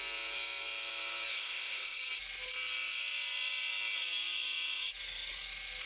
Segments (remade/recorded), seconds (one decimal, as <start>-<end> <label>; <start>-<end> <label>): 0.0-1.3 recorded; 1.3-2.0 remade; 2.0-5.9 recorded

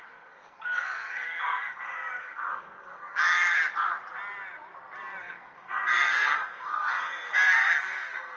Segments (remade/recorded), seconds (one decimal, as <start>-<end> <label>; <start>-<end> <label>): 0.0-3.6 remade; 3.6-5.2 recorded; 5.2-8.4 remade